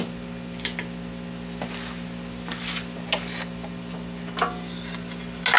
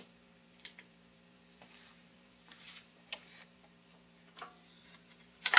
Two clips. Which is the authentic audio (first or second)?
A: first